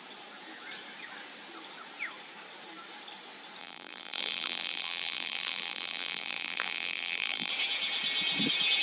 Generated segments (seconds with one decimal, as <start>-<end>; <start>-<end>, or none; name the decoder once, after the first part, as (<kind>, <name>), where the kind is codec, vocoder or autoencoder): 3.6-7.5 (vocoder, BigVGAN v2)